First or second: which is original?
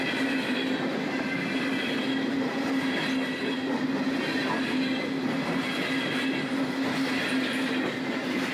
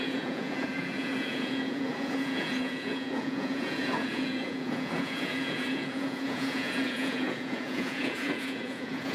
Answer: first